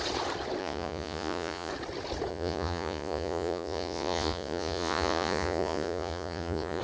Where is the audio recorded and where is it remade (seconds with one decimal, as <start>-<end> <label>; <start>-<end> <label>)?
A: 0.0-0.6 recorded; 0.6-1.7 remade; 1.7-2.3 recorded; 2.3-6.8 remade